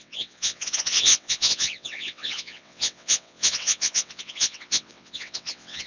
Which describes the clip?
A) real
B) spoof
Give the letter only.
B